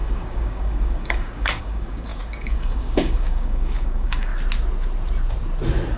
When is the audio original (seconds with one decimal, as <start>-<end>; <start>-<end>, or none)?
4.3-6.0